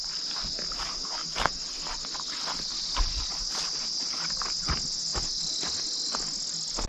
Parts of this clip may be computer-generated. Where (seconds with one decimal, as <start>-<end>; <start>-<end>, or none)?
none